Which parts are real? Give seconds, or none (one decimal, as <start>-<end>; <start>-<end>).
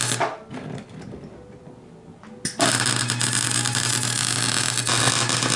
0.0-5.6